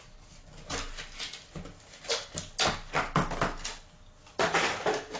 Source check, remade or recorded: recorded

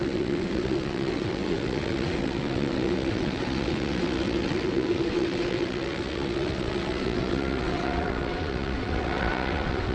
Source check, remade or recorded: remade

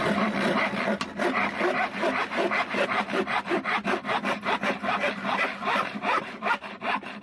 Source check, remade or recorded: recorded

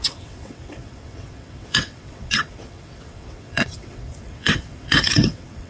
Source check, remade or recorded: remade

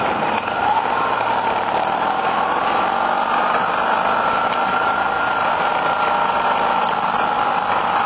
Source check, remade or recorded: recorded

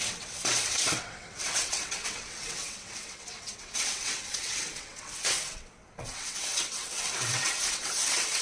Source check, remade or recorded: remade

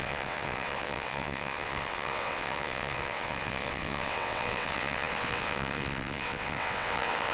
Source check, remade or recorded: remade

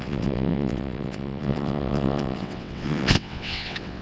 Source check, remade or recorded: remade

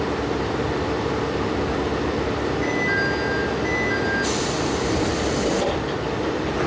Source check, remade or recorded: recorded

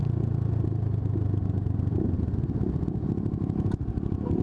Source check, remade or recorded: recorded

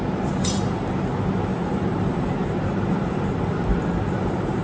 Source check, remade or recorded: recorded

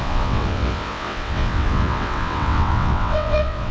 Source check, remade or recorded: remade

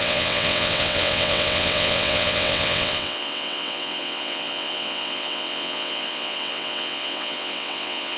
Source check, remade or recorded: remade